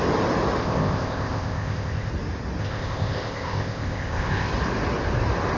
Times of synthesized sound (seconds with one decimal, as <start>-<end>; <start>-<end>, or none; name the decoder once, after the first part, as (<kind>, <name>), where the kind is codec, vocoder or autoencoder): 0.6-2.1 (codec, ZipCodec); 2.6-4.5